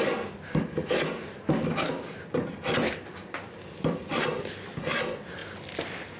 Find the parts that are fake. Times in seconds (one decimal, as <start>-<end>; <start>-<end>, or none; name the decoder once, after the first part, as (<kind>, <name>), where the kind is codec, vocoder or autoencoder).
none